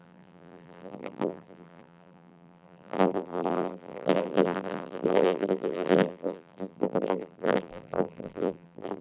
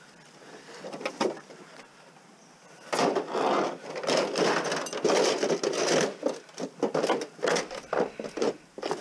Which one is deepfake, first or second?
first